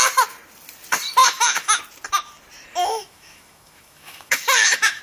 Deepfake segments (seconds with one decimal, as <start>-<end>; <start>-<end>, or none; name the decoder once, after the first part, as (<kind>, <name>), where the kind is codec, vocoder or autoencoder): 1.2-1.8 (autoencoder, DAC-VAE); 2.8-5.0